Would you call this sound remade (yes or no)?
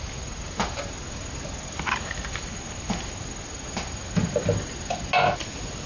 no